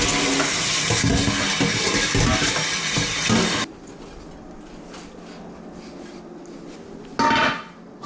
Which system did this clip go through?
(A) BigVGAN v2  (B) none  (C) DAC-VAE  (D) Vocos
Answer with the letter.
B